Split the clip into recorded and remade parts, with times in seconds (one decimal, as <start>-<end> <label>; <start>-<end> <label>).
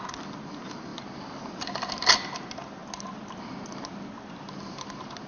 0.0-5.3 recorded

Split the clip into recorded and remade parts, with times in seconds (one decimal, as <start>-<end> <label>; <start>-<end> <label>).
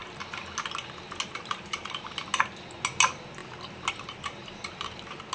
0.0-5.3 recorded